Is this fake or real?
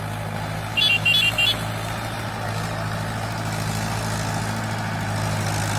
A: real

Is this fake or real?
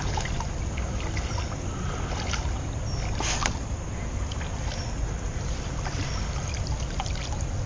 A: real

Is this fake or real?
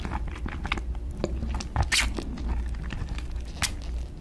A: real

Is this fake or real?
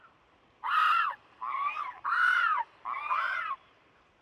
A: fake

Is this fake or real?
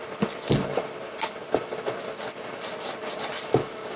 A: real